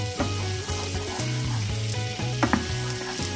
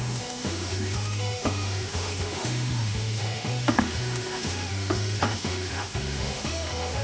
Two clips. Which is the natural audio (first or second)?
first